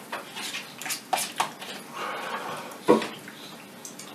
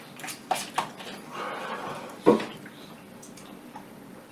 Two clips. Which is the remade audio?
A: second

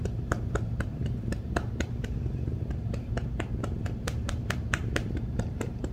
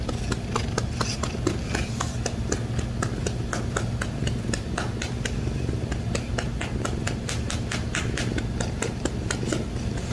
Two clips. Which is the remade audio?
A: first